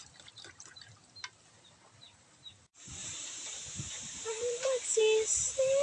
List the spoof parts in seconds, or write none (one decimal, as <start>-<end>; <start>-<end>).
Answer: 3.0-5.0